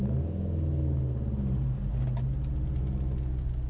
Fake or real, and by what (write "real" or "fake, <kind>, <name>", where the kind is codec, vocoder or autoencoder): real